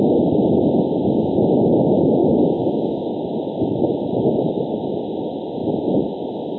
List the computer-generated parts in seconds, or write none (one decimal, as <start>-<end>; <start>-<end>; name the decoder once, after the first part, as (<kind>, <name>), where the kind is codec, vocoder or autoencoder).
none